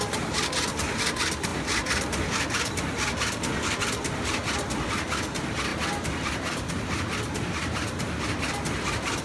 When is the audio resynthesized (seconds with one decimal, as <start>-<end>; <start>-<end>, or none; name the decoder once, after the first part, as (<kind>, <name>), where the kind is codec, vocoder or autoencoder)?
none

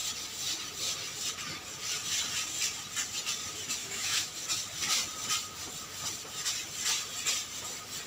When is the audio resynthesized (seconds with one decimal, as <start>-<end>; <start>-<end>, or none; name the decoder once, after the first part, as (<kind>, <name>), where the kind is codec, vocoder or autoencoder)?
3.8-4.3 (autoencoder, DAC-VAE)

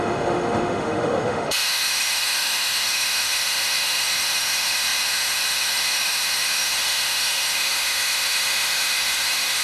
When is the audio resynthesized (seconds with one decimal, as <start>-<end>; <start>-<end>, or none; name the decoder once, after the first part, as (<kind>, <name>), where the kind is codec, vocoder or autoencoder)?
0.0-9.6 (autoencoder, DAC-VAE)

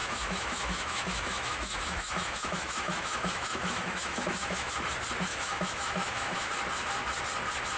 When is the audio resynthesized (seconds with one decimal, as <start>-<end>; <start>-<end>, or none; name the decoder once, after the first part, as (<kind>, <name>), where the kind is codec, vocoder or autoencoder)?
0.0-4.7 (autoencoder, DAC-VAE); 5.3-6.5

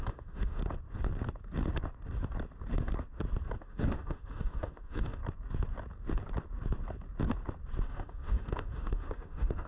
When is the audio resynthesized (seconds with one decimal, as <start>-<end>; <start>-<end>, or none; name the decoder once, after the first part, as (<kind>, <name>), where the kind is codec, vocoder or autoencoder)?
0.0-0.6 (autoencoder, DAC-VAE); 3.6-5.2; 7.8-9.7

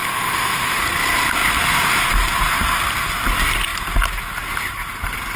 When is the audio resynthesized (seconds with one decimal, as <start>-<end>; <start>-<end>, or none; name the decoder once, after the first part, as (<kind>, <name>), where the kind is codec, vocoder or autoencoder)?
0.0-0.8 (autoencoder, DAC-VAE)

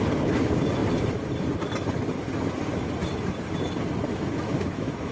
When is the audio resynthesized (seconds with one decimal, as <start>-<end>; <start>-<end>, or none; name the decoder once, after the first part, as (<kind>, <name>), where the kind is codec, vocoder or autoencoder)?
4.1-5.1 (autoencoder, DAC-VAE)